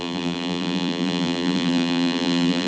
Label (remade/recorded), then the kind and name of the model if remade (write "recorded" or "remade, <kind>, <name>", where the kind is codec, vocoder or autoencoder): remade, vocoder, BigVGAN v2